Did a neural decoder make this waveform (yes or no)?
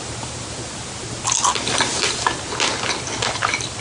no